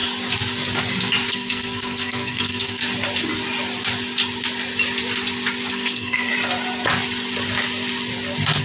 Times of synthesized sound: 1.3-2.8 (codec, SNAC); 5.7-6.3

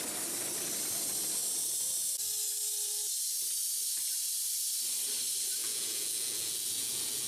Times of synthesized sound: 5.6-7.3 (vocoder, Vocos)

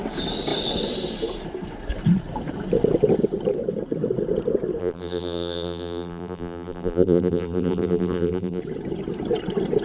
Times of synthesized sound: 4.8-8.6 (vocoder, BigVGAN v2)